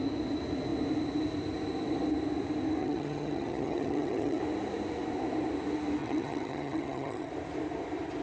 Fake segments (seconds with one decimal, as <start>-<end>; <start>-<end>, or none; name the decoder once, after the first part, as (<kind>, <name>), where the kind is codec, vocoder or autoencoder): 2.8-4.4 (vocoder, HiFi-GAN); 6.0-7.3